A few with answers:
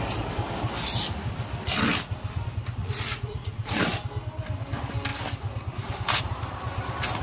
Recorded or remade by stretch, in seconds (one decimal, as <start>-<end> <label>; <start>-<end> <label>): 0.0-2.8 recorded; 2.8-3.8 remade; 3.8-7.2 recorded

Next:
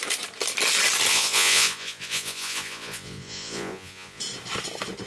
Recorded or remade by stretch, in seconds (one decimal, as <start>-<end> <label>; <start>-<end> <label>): 0.0-1.1 recorded; 1.1-4.2 remade; 4.2-5.1 recorded

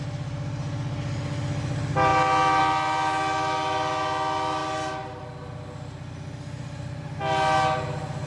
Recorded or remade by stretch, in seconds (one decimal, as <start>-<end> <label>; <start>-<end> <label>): 0.0-8.3 recorded

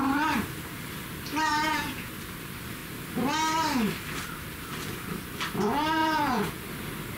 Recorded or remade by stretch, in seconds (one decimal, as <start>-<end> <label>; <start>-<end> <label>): 0.0-1.5 recorded; 1.5-2.1 remade; 2.1-6.0 recorded; 6.0-6.6 remade; 6.6-7.2 recorded

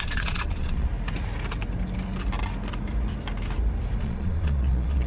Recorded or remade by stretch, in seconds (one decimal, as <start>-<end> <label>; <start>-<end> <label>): 0.0-0.9 remade; 0.9-4.0 recorded; 4.0-5.1 remade